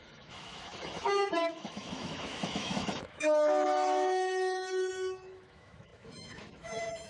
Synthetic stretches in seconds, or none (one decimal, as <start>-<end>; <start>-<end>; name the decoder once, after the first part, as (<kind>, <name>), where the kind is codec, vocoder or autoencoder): 0.0-7.1 (autoencoder, DAC-VAE)